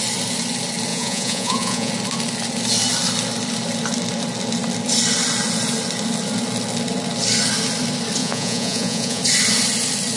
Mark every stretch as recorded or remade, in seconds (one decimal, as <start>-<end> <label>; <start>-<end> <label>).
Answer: 0.0-0.9 recorded; 0.9-1.9 remade; 1.9-8.2 recorded; 8.2-9.2 remade; 9.2-10.2 recorded